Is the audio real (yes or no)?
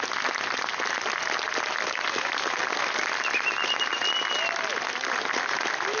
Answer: yes